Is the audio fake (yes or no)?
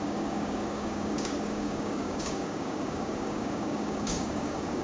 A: yes